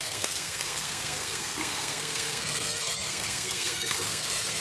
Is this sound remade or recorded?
remade